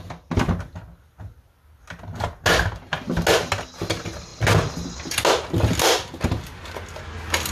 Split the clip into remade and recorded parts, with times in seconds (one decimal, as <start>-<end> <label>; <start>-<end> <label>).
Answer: 0.0-7.5 recorded